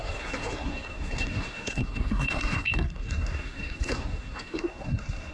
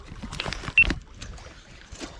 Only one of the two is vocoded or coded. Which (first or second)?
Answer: first